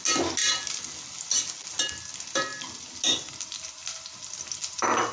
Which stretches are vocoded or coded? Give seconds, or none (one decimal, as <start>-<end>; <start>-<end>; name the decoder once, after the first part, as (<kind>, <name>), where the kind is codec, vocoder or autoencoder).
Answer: none